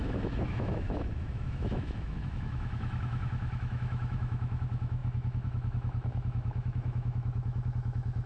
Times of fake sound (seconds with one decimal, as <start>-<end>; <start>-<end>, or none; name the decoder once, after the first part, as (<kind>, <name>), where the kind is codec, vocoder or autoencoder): 0.0-8.3 (autoencoder, DAC-VAE)